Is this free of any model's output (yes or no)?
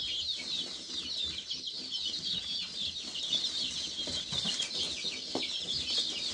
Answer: yes